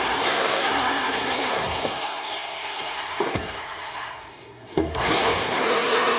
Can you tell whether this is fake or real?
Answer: fake